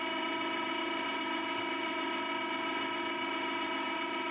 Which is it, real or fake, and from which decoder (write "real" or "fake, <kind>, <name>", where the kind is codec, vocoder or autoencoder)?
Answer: fake, vocoder, BigVGAN v2